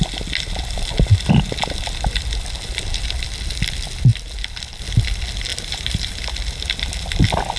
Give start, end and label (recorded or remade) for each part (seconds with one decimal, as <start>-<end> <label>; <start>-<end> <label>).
0.0-5.5 recorded; 5.5-6.1 remade; 6.1-7.6 recorded